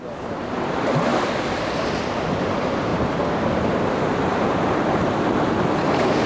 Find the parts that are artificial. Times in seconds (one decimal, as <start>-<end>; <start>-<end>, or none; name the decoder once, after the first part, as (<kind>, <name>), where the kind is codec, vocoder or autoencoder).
0.0-1.1 (vocoder, BigVGAN v2); 2.4-6.3